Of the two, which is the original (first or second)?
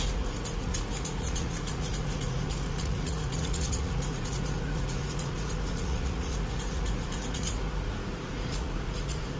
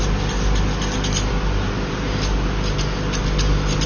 second